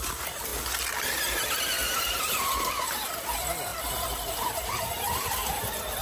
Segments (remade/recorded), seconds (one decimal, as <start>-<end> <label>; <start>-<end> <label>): 0.0-3.7 recorded; 3.7-4.8 remade; 4.8-6.0 recorded